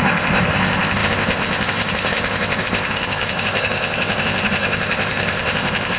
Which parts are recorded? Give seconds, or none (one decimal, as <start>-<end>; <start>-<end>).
none